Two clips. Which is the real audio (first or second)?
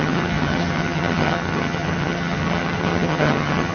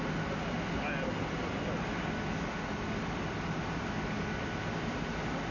second